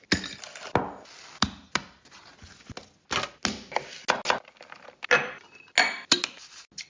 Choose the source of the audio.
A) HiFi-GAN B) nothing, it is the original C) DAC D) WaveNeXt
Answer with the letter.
B